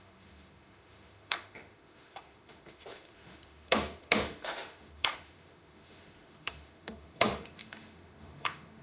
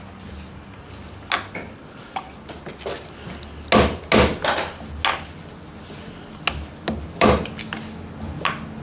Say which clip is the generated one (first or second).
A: first